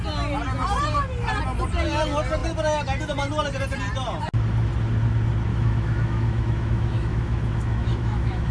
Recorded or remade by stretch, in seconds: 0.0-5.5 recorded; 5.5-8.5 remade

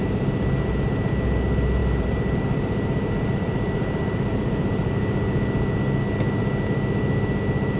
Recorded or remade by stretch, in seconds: 0.0-1.8 recorded; 1.8-4.9 remade; 4.9-7.8 recorded

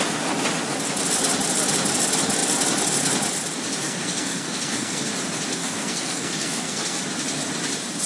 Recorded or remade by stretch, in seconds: 0.0-3.8 recorded; 3.8-5.1 remade; 5.1-5.5 recorded; 5.5-7.0 remade; 7.0-8.1 recorded

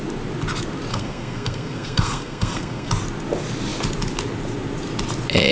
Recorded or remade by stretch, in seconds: 0.0-0.9 recorded; 0.9-2.9 remade; 2.9-5.5 recorded

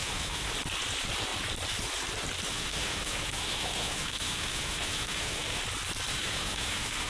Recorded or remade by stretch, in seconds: 0.0-0.5 remade; 0.5-2.5 recorded; 2.5-5.6 remade; 5.6-6.1 recorded; 6.1-7.1 remade

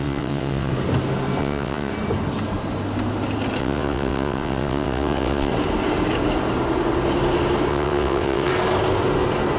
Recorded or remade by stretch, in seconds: 0.0-0.7 remade; 0.7-1.4 recorded; 1.4-1.9 remade; 1.9-3.6 recorded; 3.6-5.5 remade; 5.5-7.7 recorded; 7.7-8.5 remade; 8.5-9.6 recorded

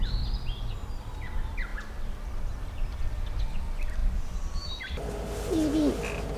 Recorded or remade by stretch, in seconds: 0.0-6.4 recorded